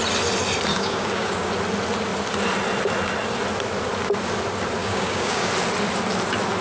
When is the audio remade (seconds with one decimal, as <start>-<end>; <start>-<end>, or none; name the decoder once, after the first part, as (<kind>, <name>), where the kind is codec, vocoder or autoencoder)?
0.7-1.5 (codec, DAC); 4.8-5.5